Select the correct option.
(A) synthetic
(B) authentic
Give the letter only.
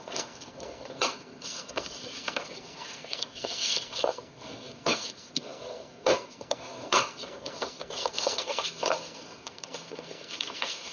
A